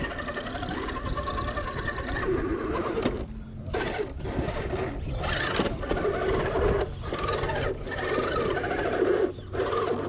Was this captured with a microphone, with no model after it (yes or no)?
no